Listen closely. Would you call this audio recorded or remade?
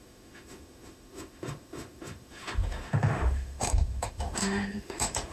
remade